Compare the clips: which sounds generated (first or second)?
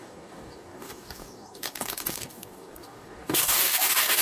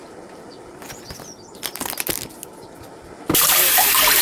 first